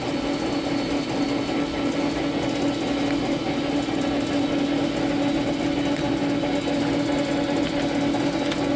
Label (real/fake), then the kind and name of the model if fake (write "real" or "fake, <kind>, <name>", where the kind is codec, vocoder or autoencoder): real